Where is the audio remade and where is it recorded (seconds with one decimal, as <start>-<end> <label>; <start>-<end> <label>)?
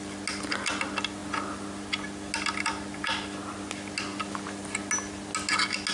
0.0-5.9 recorded